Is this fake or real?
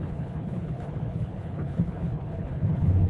fake